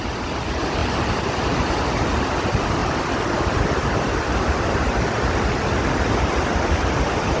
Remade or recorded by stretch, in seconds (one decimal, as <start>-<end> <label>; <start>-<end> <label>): 0.0-7.4 recorded